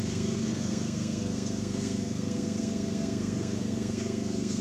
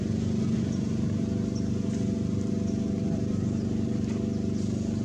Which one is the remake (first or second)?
first